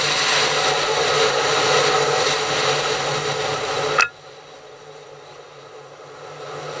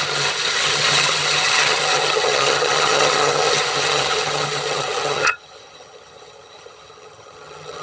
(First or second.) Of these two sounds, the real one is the first